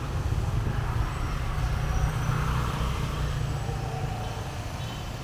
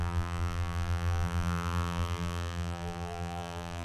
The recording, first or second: first